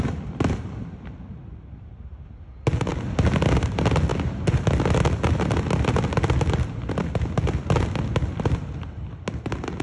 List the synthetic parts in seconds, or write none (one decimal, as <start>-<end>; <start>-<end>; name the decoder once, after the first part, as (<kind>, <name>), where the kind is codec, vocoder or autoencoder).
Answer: none